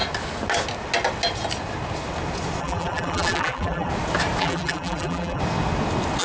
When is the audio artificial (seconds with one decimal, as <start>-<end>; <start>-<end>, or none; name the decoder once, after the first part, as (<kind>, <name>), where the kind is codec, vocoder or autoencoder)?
2.6-3.9 (vocoder, BigVGAN v2); 4.4-5.4